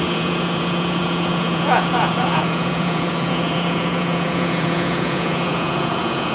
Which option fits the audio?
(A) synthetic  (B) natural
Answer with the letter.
A